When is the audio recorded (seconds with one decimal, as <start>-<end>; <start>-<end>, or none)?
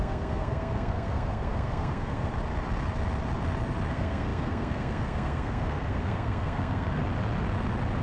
2.3-3.9; 7.0-8.0